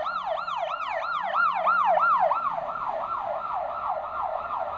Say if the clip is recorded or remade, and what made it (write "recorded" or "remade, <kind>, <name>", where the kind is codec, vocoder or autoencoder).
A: recorded